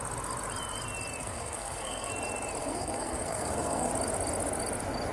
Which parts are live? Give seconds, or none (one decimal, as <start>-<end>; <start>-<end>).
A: 0.0-1.2; 2.1-2.6; 3.9-5.1